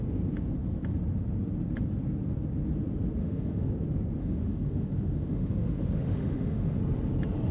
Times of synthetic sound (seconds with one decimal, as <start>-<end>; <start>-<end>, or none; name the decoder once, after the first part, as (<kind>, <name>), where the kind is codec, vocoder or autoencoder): 3.2-3.7 (autoencoder, DAC-VAE); 4.2-6.8